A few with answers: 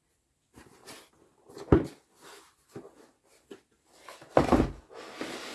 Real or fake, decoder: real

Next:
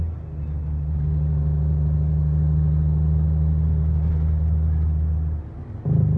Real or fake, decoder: real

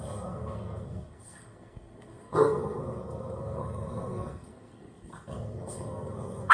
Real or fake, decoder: fake, codec, SNAC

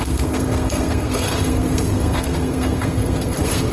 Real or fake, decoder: fake, codec, SNAC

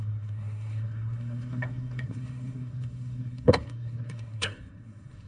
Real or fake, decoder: fake, codec, SNAC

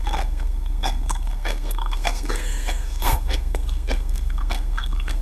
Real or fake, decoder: fake, codec, SNAC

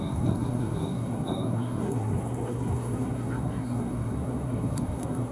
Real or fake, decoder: fake, codec, SNAC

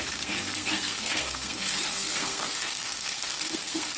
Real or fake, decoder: fake, codec, SNAC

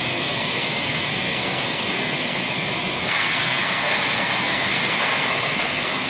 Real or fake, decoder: fake, codec, SNAC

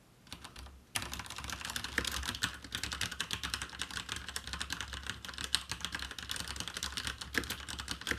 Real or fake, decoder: real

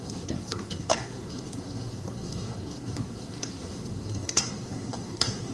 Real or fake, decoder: fake, codec, SNAC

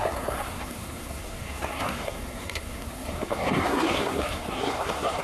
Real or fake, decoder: fake, codec, SNAC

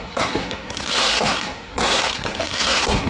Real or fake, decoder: fake, codec, SNAC